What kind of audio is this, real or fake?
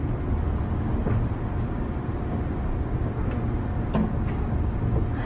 real